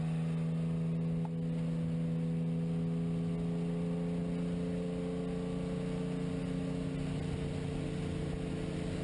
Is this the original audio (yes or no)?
yes